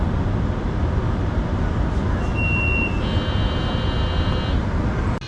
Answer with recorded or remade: recorded